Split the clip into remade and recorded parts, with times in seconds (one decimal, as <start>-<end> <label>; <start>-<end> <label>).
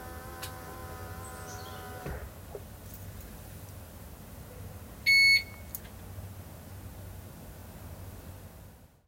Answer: 0.0-9.1 recorded